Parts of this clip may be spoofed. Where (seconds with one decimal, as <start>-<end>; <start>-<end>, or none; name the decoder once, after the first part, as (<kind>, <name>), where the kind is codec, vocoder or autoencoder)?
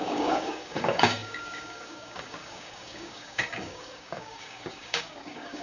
0.0-5.6 (codec, DAC)